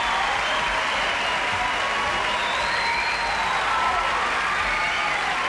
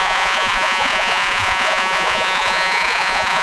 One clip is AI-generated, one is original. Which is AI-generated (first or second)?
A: second